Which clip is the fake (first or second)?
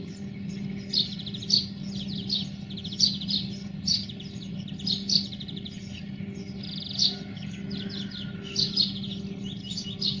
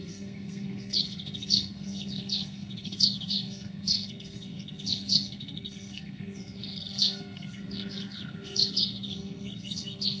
second